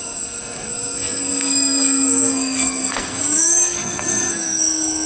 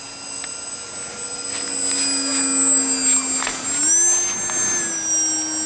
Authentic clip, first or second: second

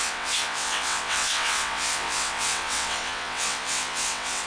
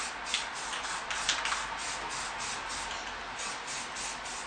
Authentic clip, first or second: second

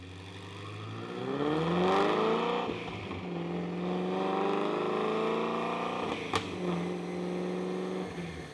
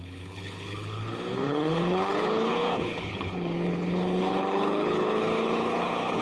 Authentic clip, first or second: first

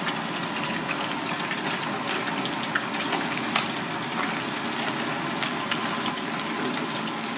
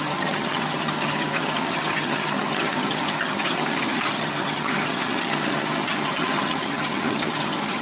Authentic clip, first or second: first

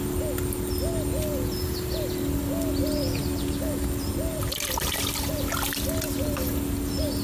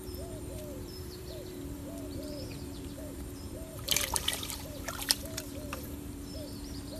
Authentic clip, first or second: first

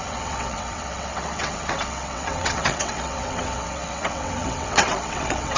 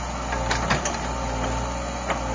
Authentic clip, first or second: second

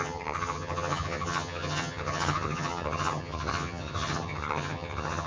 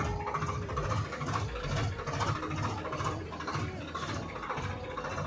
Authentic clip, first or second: second